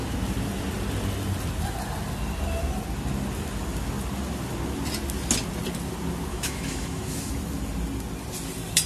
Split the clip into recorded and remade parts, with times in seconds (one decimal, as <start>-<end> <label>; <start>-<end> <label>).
0.0-6.3 recorded; 6.3-7.3 remade; 7.3-8.9 recorded